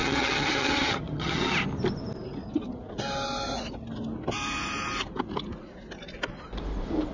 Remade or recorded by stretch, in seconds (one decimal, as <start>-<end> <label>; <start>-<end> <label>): 0.0-1.5 remade; 1.5-7.1 recorded